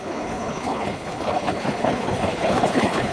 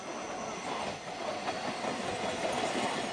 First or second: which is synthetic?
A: first